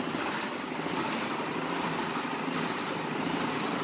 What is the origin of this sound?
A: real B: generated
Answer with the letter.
B